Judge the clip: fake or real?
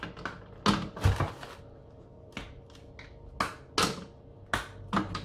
real